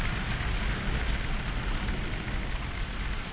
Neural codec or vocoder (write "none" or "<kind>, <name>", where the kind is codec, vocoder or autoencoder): none